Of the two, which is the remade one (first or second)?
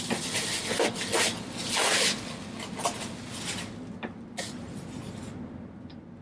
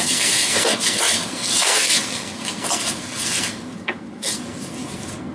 second